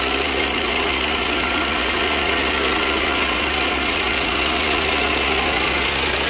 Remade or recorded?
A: remade